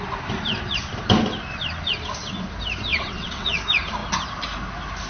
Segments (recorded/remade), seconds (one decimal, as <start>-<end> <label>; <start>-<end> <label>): 0.0-2.9 recorded; 2.9-3.6 remade; 3.6-5.1 recorded